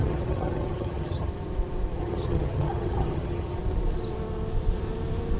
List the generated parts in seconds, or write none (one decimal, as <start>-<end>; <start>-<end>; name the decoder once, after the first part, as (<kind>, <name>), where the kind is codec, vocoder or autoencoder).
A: 0.0-1.3 (vocoder, HiFi-GAN); 2.0-3.6

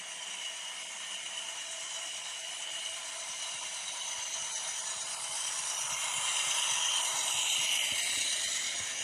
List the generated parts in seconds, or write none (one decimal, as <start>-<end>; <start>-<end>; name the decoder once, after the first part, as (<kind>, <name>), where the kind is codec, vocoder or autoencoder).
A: none

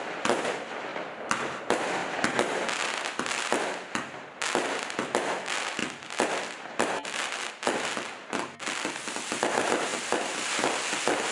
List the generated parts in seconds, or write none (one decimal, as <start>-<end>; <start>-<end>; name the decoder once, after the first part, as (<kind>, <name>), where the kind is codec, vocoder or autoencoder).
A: 0.9-1.6 (vocoder, BigVGAN v2); 5.8-7.5; 9.9-10.7

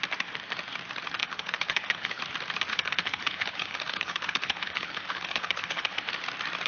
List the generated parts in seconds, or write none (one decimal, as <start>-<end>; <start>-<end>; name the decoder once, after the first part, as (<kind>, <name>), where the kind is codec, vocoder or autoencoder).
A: 1.2-2.2 (codec, HILCodec); 2.7-6.0